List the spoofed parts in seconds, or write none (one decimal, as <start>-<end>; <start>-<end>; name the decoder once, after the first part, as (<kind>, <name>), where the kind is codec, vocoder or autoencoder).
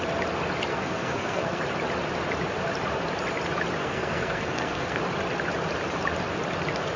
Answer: 0.7-1.6 (codec, SNAC); 3.8-5.0